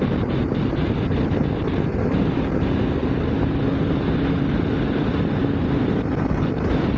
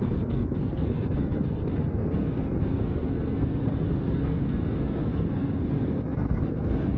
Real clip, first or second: first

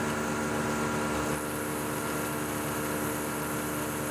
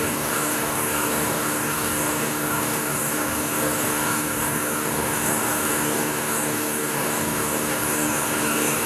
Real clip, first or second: first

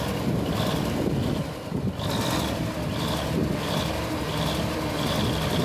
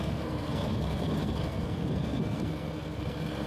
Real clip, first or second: first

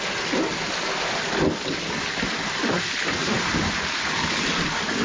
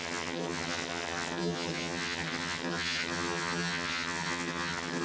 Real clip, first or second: first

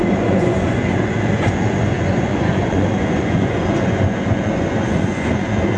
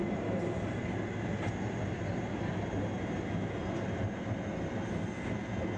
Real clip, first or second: second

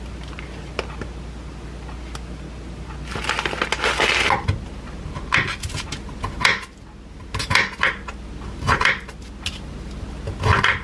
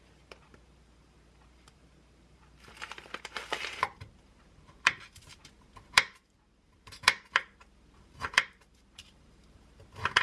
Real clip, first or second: first